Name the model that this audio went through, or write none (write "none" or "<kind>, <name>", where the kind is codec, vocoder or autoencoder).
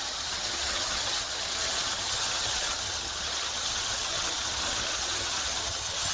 vocoder, HiFi-GAN